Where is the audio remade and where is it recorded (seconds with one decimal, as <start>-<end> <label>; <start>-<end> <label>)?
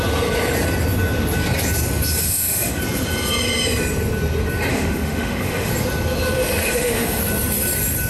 0.0-2.2 recorded; 2.2-2.8 remade; 2.8-4.7 recorded; 4.7-5.7 remade; 5.7-6.6 recorded; 6.6-7.2 remade; 7.2-8.1 recorded